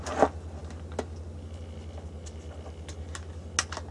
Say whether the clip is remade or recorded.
recorded